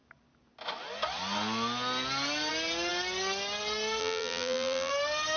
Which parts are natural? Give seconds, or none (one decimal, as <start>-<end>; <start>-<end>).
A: 0.0-4.0; 4.9-5.4